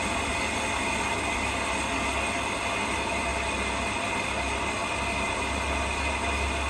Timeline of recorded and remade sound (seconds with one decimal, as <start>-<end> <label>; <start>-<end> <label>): 0.0-6.7 recorded